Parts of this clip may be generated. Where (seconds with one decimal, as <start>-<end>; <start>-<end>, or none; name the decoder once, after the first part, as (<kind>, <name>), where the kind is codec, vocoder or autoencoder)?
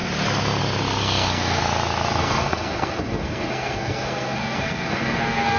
1.0-1.6 (codec, SNAC); 2.2-5.6